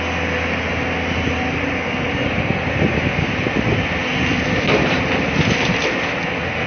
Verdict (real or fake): real